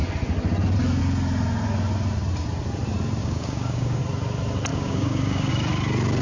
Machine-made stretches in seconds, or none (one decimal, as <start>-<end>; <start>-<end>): 3.2-4.0; 4.7-5.5